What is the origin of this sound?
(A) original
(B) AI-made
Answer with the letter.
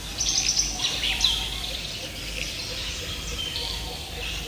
B